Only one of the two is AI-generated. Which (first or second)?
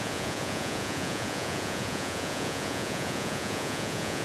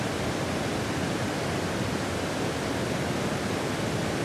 first